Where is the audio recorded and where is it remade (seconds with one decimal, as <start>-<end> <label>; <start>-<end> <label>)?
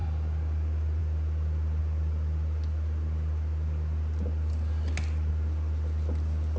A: 0.0-6.6 recorded